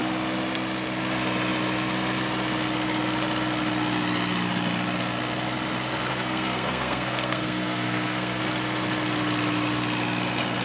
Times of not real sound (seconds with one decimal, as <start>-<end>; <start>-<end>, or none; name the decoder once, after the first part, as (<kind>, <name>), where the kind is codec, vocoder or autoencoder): 6.1-8.4 (codec, SNAC)

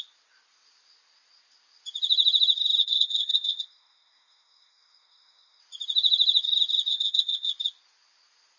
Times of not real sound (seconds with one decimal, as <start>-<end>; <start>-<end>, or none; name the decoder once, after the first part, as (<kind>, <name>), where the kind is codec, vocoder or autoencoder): 2.8-5.6 (codec, SNAC); 6.9-7.5